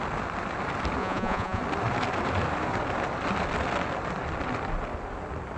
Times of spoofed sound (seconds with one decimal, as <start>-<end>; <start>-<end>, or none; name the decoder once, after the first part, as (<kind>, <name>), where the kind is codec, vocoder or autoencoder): 1.0-1.6 (vocoder, Vocos)